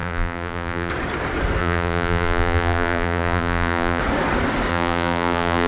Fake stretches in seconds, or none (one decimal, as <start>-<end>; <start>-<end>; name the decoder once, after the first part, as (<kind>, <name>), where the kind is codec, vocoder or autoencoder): 0.0-0.9 (vocoder, BigVGAN v2); 1.6-4.0; 4.7-5.7